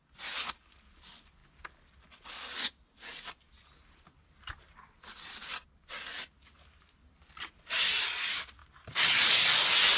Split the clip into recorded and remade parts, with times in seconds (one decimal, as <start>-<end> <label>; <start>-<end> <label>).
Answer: 0.0-10.0 recorded